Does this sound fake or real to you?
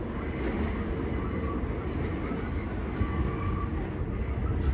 real